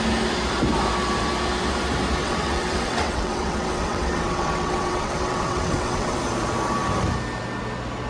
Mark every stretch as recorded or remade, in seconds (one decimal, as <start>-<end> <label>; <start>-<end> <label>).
0.0-2.2 recorded; 2.2-6.2 remade; 6.2-8.1 recorded